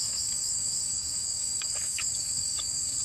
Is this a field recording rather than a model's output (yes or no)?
no